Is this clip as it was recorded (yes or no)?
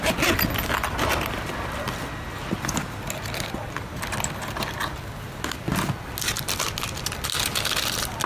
yes